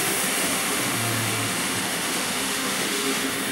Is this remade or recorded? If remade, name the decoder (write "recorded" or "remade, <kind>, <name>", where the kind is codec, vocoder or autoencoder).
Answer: remade, autoencoder, DAC-VAE